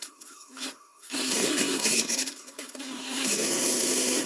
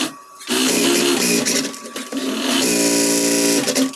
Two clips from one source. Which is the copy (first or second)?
first